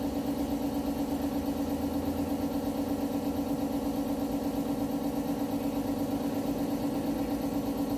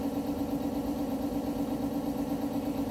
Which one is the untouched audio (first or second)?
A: first